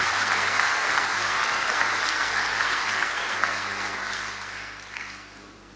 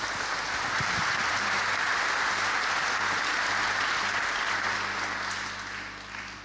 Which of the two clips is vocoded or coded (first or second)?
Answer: first